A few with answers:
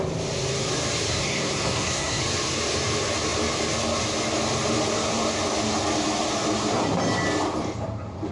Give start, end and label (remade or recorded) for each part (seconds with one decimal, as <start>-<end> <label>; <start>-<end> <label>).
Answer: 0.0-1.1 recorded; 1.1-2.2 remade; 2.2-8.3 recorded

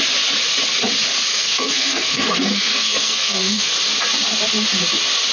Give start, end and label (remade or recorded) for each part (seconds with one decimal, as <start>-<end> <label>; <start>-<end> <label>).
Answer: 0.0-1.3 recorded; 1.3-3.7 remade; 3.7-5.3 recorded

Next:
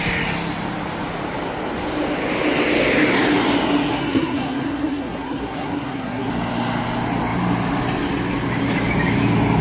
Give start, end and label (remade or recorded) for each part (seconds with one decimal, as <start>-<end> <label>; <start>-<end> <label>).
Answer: 0.0-3.9 recorded; 3.9-6.3 remade; 6.3-9.6 recorded

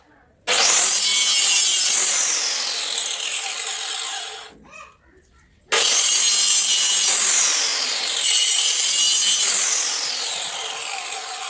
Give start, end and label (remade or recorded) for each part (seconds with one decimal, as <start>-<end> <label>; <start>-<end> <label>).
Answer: 0.0-11.5 recorded

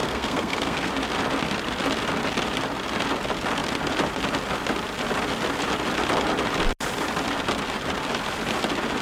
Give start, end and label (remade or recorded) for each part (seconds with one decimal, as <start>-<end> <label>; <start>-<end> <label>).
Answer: 0.0-0.9 remade; 0.9-9.0 recorded

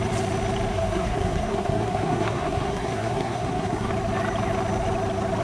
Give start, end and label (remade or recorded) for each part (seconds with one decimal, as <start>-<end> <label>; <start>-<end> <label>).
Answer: 0.0-0.7 recorded; 0.7-3.9 remade; 3.9-5.4 recorded